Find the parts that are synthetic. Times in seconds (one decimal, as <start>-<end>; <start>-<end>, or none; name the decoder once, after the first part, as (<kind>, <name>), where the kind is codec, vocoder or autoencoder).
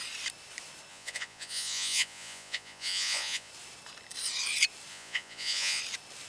0.9-3.5 (vocoder, Vocos); 4.9-5.8